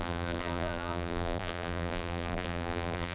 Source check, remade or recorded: remade